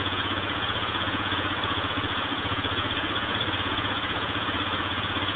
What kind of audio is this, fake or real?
fake